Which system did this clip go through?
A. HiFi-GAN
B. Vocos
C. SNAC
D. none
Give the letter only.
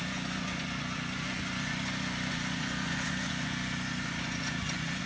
B